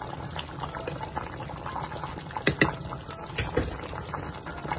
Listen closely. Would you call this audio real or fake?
real